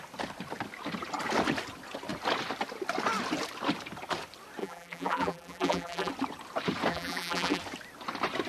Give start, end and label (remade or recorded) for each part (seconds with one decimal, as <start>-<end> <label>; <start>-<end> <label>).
0.0-4.6 recorded; 4.6-6.1 remade; 6.1-6.9 recorded; 6.9-7.6 remade; 7.6-8.5 recorded